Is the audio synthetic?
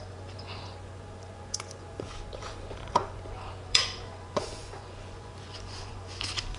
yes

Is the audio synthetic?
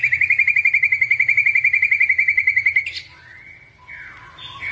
no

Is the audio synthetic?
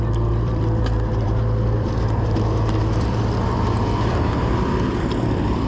yes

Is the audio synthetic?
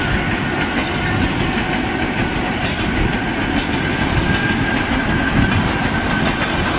no